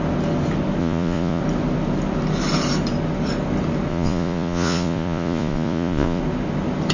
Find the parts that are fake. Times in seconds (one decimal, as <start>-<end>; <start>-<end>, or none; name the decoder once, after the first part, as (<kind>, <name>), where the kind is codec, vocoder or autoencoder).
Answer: 0.8-1.4 (vocoder, Vocos); 3.9-6.2